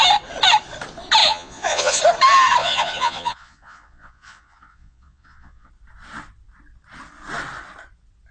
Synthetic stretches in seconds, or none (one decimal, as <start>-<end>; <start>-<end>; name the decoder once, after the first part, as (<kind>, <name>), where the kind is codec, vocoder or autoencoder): 1.2-2.0 (vocoder, Vocos); 2.6-5.7